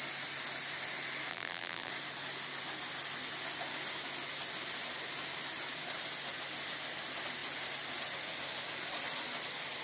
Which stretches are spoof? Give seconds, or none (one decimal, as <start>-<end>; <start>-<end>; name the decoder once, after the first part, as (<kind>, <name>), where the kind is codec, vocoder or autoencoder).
1.3-1.9 (vocoder, BigVGAN v2)